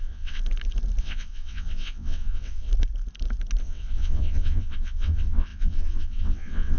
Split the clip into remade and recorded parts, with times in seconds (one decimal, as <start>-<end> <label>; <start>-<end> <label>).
0.0-0.4 remade; 0.4-1.0 recorded; 1.0-2.7 remade; 2.7-3.6 recorded; 3.6-6.8 remade